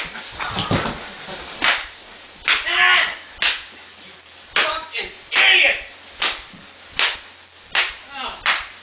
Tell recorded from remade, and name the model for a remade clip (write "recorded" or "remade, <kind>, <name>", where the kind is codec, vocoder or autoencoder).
recorded